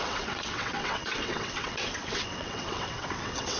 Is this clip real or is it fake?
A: fake